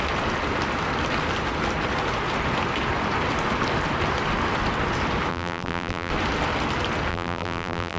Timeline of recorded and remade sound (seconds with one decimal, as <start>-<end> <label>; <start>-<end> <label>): 0.0-5.3 recorded; 5.3-6.1 remade; 6.1-7.1 recorded; 7.1-8.0 remade